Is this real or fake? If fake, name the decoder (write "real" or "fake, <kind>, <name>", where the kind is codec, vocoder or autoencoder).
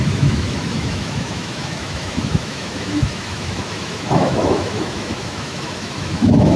fake, autoencoder, DAC-VAE